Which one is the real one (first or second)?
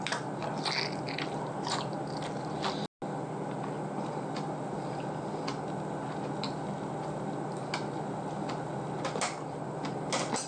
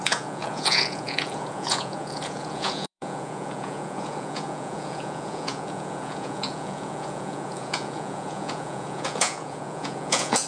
first